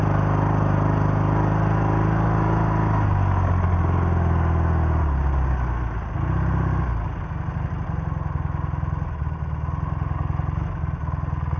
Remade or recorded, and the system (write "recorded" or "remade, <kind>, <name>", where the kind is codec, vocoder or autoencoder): recorded